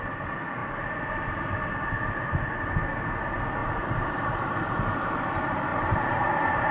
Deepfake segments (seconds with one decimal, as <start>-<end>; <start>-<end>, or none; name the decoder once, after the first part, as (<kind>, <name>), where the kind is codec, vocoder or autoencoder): 3.6-4.9 (vocoder, BigVGAN v2); 5.7-6.2